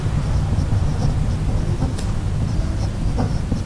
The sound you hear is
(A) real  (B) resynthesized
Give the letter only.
A